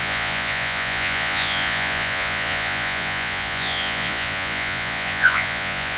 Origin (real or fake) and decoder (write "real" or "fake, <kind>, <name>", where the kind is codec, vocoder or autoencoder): fake, vocoder, Vocos